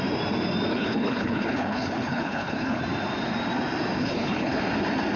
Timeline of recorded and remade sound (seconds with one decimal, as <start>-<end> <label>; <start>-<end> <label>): 0.0-0.7 recorded; 0.7-2.8 remade; 2.8-4.0 recorded; 4.0-4.6 remade; 4.6-5.2 recorded